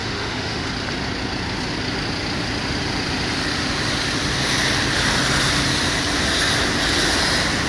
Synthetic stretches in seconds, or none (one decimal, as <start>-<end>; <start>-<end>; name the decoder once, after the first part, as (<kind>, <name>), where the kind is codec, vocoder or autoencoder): 0.0-0.7 (autoencoder, DAC-VAE)